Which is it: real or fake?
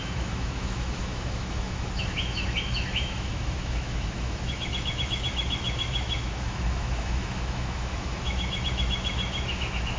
fake